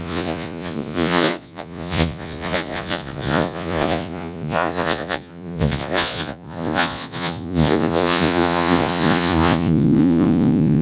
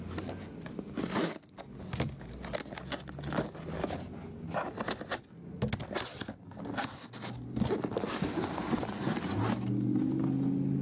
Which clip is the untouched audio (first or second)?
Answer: second